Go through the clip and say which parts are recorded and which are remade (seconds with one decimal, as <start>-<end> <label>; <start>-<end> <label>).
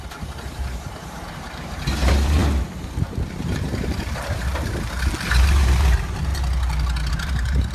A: 0.0-2.4 remade; 2.4-3.3 recorded; 3.3-4.5 remade; 4.5-5.3 recorded; 5.3-6.3 remade; 6.3-7.1 recorded; 7.1-7.7 remade